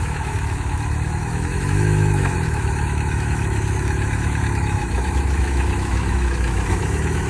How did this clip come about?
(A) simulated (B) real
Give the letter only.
A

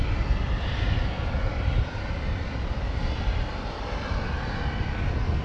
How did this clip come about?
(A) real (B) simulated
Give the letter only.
A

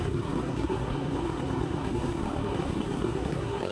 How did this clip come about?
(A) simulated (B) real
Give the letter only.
A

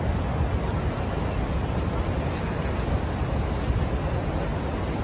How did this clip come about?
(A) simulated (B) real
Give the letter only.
B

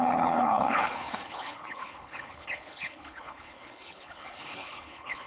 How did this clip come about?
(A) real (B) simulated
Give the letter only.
B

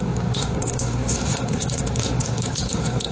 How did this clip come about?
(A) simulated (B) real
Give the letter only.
A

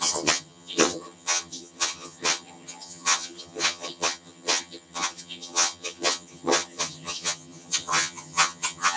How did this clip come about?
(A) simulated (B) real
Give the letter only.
A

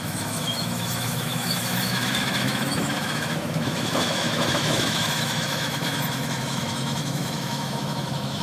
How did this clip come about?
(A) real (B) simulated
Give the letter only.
B